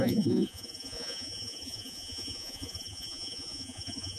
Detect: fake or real fake